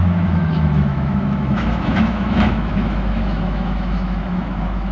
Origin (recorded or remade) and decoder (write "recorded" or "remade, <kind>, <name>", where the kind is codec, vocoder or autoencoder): remade, autoencoder, DAC-VAE